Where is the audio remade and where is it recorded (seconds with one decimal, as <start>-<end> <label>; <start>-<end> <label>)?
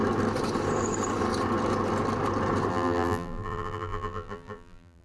0.0-2.7 recorded; 2.7-5.0 remade